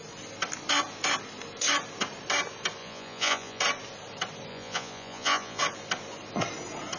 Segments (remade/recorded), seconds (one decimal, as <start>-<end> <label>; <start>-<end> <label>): 0.0-2.8 recorded; 2.8-3.6 remade; 3.6-4.5 recorded; 4.5-5.6 remade; 5.6-7.0 recorded